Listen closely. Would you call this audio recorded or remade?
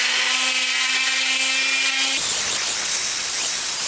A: recorded